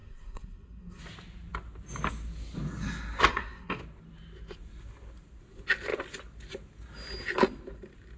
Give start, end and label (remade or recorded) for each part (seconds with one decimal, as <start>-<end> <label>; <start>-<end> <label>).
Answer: 0.0-1.0 remade; 1.0-3.3 recorded; 3.3-3.8 remade; 3.8-8.2 recorded